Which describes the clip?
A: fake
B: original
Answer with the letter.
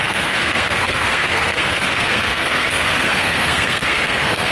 A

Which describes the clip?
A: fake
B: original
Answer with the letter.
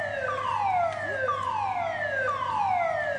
B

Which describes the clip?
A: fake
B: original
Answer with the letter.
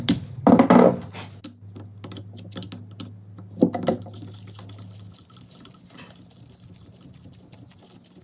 B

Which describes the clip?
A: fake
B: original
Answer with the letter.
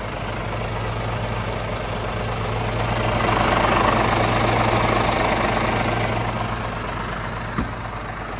B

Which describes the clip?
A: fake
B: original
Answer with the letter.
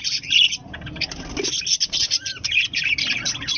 B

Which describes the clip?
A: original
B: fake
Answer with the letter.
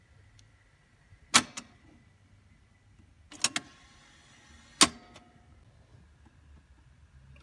A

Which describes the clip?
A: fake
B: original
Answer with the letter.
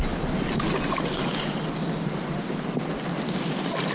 B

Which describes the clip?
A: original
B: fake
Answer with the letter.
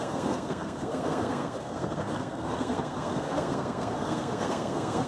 B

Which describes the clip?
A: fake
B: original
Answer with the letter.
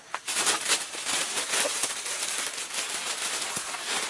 B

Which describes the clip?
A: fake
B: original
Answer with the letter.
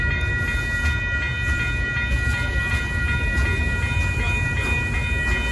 B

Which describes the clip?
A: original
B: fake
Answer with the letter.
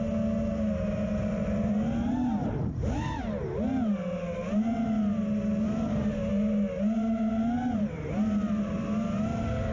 A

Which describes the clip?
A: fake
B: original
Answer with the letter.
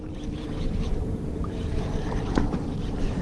A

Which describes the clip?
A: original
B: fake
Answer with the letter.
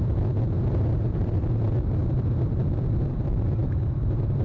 B